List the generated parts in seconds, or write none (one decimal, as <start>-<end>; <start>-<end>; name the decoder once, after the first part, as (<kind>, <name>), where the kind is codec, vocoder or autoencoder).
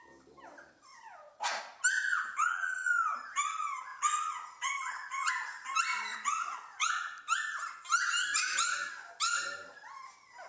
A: 0.9-1.6 (vocoder, Vocos); 2.1-2.9; 3.9-5.3; 6.1-7.0